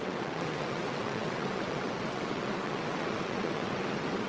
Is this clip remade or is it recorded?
remade